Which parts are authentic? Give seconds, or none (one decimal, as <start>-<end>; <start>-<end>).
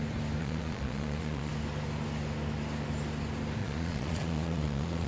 0.0-0.4; 1.5-3.6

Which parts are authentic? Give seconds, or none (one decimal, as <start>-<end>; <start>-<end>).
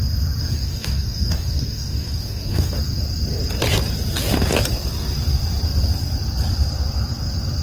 0.0-0.4; 2.7-7.6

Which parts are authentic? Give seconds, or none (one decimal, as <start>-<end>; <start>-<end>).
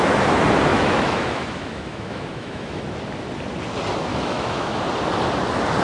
0.0-0.7; 2.8-4.1; 4.8-5.8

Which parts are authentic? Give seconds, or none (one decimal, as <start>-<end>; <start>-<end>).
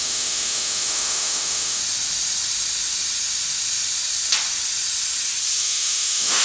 1.8-5.6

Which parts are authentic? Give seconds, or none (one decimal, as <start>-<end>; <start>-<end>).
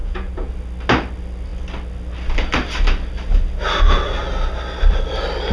0.5-5.5